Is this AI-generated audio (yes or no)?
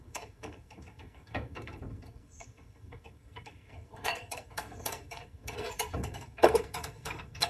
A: yes